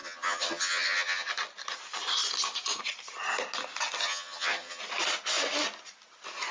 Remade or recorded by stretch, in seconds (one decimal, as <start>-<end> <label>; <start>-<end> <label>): 0.0-1.3 remade; 1.3-4.0 recorded; 4.0-4.8 remade; 4.8-6.5 recorded